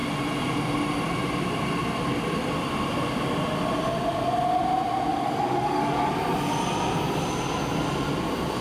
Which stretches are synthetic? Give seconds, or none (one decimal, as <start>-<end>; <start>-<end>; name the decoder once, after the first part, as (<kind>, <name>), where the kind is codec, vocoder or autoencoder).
5.1-6.1 (codec, DAC)